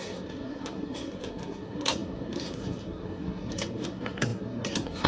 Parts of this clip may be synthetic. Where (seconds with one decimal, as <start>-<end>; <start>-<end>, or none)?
0.0-5.1